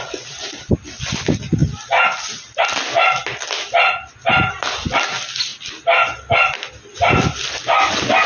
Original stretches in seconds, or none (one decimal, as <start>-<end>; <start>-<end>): 0.0-8.3